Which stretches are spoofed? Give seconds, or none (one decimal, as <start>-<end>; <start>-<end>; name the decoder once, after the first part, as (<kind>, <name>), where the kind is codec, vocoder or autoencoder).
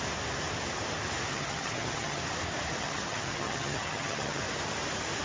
1.3-2.2 (vocoder, HiFi-GAN); 2.7-4.4